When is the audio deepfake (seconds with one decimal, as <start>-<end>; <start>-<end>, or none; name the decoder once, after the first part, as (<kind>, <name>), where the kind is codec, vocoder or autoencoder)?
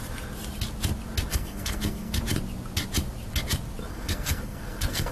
1.3-2.2 (codec, SNAC); 3.9-5.1